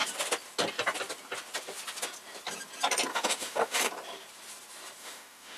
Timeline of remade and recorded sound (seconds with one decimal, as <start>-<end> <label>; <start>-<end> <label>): 0.0-3.1 recorded; 3.1-3.9 remade; 3.9-5.0 recorded; 5.0-5.6 remade